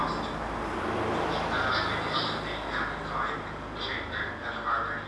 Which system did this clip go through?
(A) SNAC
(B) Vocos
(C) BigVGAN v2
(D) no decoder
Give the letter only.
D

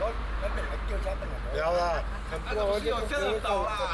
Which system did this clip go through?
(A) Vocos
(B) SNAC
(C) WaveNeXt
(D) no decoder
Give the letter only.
D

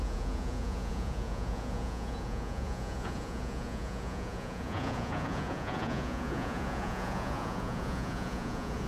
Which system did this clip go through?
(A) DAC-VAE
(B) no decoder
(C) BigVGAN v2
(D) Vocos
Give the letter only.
D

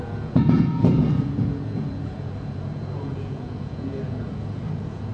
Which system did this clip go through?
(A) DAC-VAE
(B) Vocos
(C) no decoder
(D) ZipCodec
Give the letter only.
B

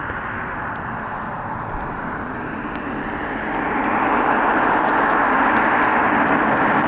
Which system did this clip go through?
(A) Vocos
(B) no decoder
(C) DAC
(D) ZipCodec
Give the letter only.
B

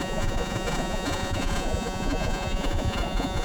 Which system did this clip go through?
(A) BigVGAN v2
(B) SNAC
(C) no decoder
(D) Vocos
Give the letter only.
D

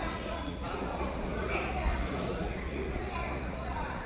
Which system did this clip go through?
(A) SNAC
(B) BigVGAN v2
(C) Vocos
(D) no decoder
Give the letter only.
C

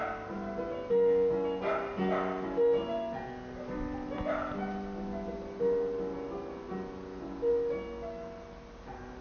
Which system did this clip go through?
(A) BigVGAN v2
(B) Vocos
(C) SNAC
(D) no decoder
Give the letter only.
D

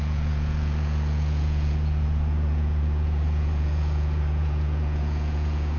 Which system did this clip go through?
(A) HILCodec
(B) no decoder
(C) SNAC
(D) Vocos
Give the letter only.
D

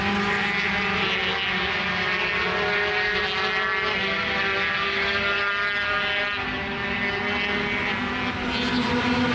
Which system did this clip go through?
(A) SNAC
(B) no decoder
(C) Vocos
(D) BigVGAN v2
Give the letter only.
B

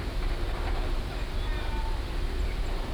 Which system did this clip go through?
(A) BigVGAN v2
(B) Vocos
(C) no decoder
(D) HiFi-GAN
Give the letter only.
C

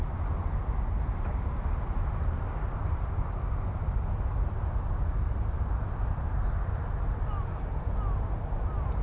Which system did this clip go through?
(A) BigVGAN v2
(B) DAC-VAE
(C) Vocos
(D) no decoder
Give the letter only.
D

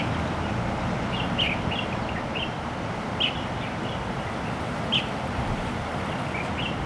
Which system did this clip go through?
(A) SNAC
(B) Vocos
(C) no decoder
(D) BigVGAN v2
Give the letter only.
C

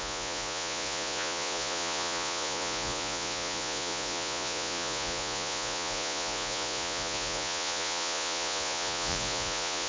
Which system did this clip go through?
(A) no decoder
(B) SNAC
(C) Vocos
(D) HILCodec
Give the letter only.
C